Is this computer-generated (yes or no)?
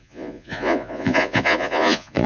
yes